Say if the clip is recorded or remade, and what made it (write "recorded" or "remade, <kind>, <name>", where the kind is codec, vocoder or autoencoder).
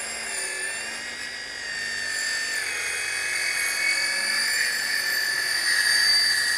recorded